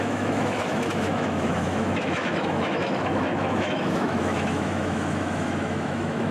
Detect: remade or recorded remade